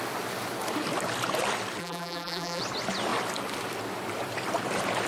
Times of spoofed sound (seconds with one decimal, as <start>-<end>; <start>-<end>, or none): 1.8-2.6